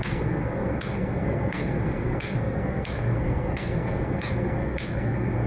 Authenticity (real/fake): fake